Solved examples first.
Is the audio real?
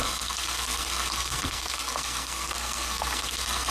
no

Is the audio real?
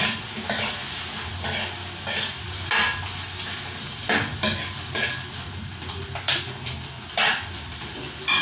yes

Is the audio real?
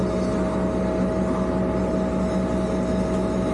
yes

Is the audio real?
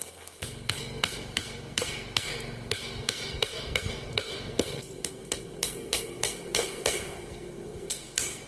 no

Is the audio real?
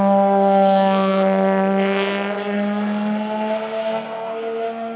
no